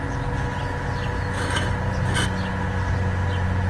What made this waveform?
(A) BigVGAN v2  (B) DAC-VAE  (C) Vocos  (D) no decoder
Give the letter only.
D